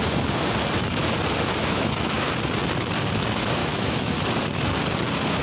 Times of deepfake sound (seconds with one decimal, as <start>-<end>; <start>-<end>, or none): 1.6-2.3; 3.6-4.1